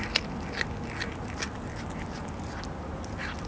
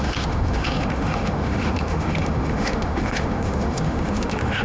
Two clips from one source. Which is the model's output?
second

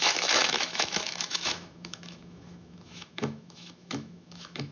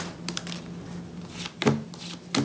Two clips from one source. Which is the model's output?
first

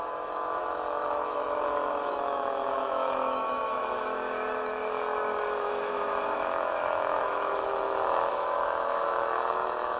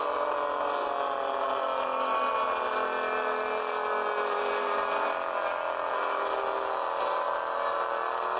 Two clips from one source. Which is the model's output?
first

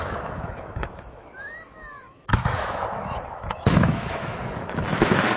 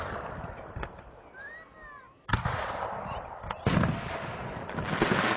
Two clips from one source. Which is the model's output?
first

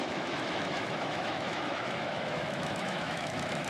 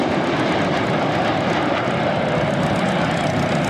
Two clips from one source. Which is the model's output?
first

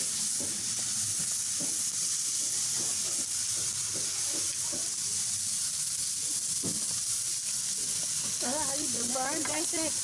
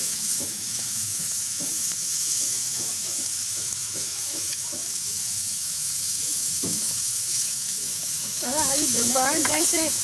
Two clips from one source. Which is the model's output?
second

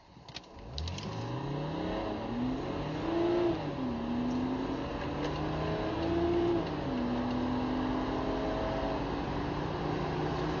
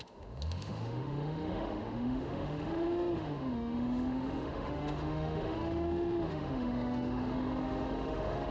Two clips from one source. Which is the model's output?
second